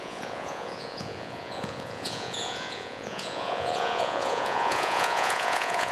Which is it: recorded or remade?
remade